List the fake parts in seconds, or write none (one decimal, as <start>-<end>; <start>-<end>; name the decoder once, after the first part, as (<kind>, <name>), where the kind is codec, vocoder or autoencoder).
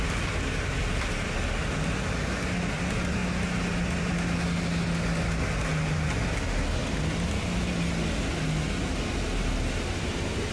none